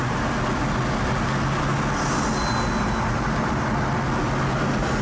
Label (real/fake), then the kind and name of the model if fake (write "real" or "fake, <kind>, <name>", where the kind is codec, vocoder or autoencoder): real